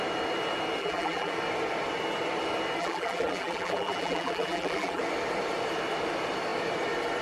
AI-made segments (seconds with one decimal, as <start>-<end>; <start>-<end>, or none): 0.8-1.3; 2.8-5.0